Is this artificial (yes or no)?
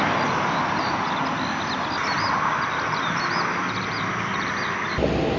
no